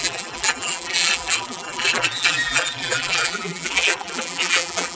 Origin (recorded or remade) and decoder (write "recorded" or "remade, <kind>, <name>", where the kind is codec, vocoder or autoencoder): remade, vocoder, BigVGAN v2